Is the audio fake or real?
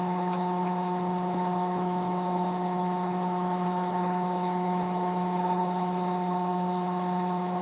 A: fake